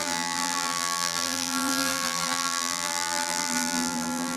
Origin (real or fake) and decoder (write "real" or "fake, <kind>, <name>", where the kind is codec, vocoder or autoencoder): fake, vocoder, BigVGAN v2